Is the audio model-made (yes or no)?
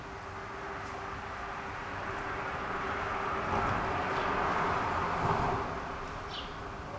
no